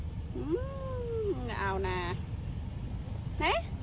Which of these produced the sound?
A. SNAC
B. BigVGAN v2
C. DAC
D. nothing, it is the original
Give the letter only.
D